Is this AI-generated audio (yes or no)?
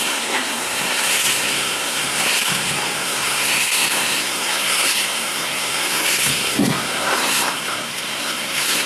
yes